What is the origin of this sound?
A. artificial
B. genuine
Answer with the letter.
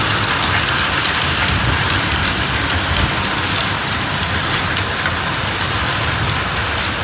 B